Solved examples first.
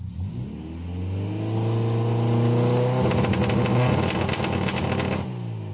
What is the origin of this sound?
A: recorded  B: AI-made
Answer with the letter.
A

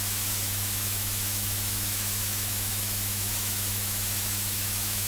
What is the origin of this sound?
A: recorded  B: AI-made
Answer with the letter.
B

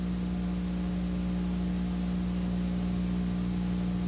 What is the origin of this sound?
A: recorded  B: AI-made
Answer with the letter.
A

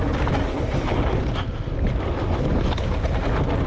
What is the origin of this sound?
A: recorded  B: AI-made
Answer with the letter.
A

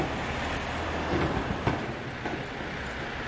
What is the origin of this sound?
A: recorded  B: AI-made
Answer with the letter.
A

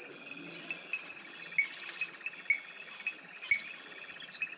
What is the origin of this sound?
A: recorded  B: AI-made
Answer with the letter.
A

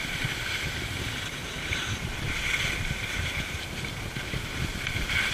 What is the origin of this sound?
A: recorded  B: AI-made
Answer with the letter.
A